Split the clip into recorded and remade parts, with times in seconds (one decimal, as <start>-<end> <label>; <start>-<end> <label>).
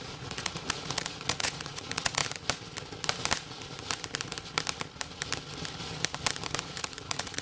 0.0-2.2 remade; 2.2-6.6 recorded; 6.6-7.4 remade